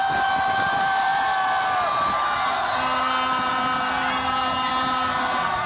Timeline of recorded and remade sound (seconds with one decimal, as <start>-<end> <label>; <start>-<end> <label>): 0.0-1.1 remade; 1.1-2.6 recorded; 2.6-5.7 remade